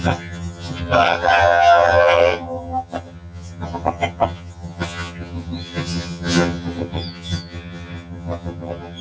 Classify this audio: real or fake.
fake